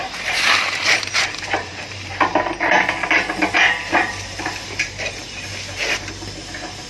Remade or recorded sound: remade